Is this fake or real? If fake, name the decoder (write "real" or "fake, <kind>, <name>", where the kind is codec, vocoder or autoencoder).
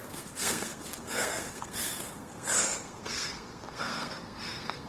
fake, codec, SNAC